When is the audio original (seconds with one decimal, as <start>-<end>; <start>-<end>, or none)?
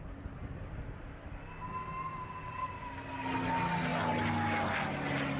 0.0-5.4